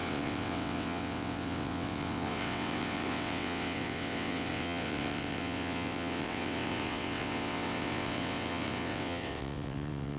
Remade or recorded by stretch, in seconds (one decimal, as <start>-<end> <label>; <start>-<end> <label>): 0.0-10.2 remade